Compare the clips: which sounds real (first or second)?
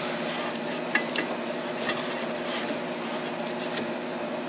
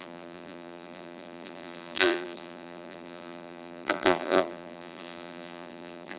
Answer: first